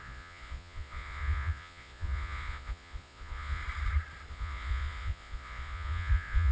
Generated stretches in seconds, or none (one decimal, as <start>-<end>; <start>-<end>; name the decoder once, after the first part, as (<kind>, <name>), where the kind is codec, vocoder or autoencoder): 0.0-3.6 (vocoder, Vocos); 4.3-6.5